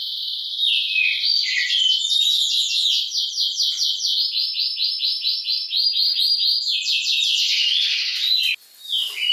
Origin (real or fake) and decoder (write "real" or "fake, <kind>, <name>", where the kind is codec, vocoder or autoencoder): real